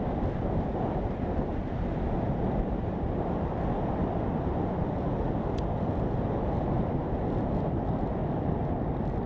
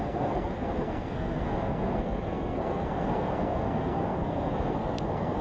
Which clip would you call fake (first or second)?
second